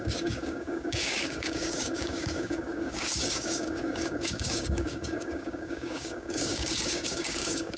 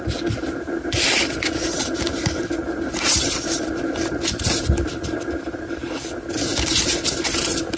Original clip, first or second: second